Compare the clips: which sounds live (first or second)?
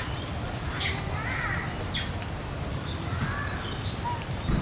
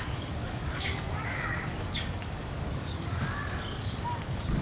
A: first